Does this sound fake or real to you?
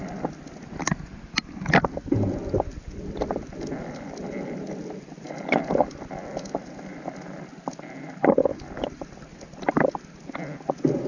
real